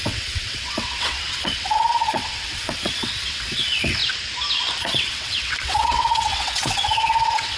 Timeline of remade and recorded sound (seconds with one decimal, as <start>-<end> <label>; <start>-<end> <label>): 0.0-4.0 remade; 4.0-4.8 recorded; 4.8-7.6 remade